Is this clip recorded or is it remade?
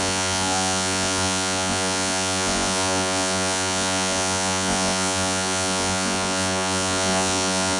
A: remade